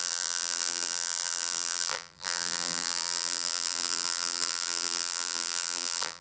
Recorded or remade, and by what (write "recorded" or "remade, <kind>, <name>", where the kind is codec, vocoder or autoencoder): remade, vocoder, BigVGAN v2